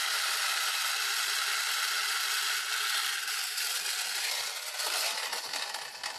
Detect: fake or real real